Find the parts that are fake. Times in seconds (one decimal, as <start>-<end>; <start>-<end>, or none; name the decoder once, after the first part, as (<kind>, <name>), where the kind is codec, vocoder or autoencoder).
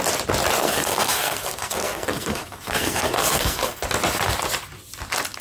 0.6-3.8 (codec, SNAC)